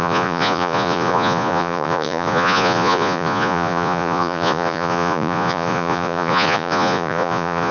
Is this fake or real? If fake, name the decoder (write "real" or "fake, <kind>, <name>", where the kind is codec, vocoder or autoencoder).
fake, vocoder, Vocos